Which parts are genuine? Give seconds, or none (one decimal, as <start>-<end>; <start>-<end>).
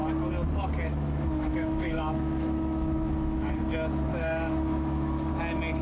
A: 0.0-0.9; 3.5-4.1; 5.3-5.8